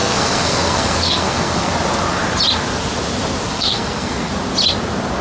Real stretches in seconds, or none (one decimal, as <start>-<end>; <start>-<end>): 1.7-3.5; 4.3-5.2